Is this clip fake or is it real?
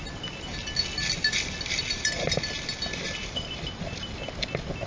real